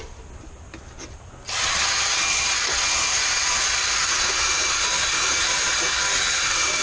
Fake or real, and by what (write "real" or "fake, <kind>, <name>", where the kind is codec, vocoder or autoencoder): real